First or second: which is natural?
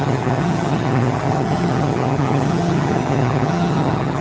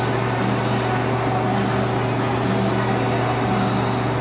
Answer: second